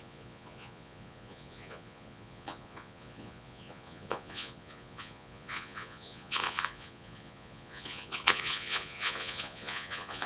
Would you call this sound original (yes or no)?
no